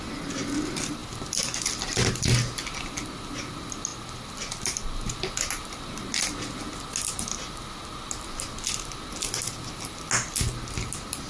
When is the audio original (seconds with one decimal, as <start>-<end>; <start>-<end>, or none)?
0.0-11.3